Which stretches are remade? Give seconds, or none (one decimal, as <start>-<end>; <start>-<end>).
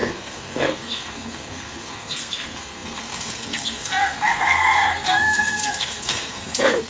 0.0-6.9